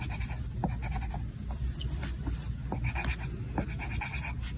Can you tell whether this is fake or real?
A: real